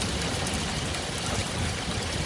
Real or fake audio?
real